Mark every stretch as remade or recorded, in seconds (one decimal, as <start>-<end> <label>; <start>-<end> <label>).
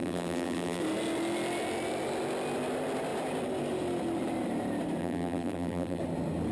0.0-0.8 remade; 0.8-5.0 recorded; 5.0-6.0 remade; 6.0-6.5 recorded